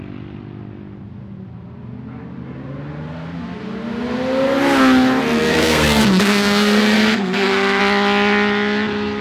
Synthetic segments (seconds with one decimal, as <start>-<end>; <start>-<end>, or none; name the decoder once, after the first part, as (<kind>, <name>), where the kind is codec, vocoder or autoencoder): 5.5-7.8 (codec, SNAC)